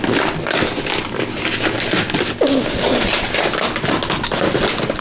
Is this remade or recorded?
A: recorded